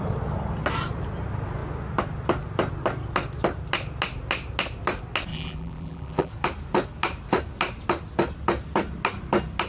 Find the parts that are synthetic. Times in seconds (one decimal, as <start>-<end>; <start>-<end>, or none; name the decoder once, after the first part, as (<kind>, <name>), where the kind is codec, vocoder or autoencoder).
5.3-6.3 (vocoder, BigVGAN v2)